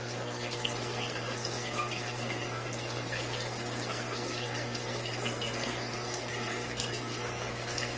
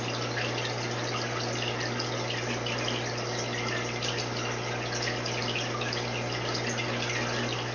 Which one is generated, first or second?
first